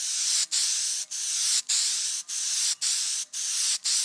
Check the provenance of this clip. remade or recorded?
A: recorded